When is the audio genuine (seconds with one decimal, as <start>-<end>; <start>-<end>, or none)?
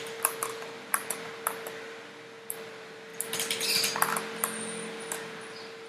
0.0-0.5; 1.4-5.9